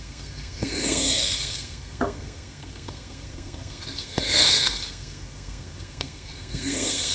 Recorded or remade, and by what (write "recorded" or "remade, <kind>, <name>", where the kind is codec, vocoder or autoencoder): remade, codec, SNAC